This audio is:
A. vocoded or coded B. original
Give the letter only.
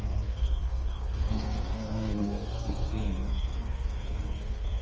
A